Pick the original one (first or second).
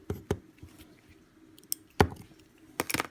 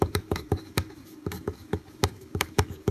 first